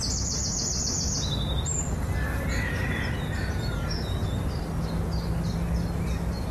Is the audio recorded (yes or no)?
yes